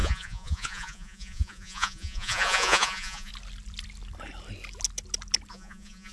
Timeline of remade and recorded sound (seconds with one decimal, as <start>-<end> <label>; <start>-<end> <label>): 0.0-3.3 remade; 3.3-5.5 recorded; 5.5-6.1 remade